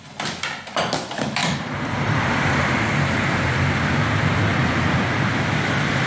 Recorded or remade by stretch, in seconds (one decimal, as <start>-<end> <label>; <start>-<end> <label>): 0.0-1.4 recorded; 1.4-4.7 remade; 4.7-6.1 recorded